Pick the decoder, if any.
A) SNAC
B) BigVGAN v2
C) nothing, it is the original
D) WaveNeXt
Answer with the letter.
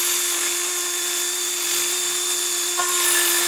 C